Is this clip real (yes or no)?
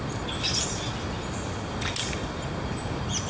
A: yes